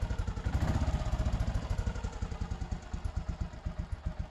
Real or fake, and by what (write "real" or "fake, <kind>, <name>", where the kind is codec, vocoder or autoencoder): real